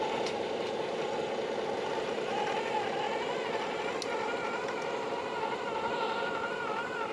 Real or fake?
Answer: real